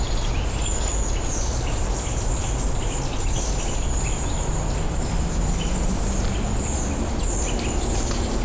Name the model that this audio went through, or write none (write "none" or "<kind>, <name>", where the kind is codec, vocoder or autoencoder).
none